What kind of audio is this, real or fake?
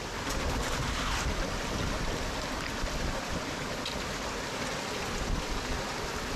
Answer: real